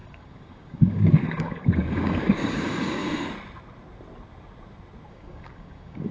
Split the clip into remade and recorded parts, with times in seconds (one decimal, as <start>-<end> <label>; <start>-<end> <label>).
0.0-3.0 remade; 3.0-5.1 recorded; 5.1-6.1 remade